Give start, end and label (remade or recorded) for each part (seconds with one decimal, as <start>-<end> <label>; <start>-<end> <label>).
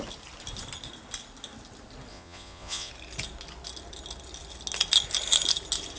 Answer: 0.0-2.1 recorded; 2.1-2.9 remade; 2.9-6.0 recorded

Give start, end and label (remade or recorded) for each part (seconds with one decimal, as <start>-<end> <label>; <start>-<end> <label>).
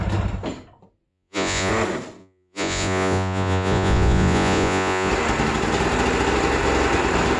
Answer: 0.0-1.1 recorded; 1.1-1.7 remade; 1.7-2.2 recorded; 2.2-5.1 remade; 5.1-7.4 recorded